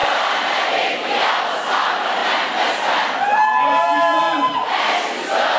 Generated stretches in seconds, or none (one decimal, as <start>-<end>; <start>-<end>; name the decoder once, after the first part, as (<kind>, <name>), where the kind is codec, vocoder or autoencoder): none